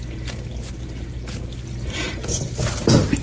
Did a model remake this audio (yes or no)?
no